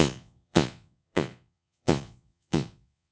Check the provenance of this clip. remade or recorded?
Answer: remade